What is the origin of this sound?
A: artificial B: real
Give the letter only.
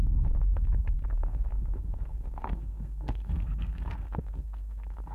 A